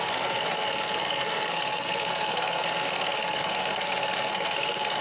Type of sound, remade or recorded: remade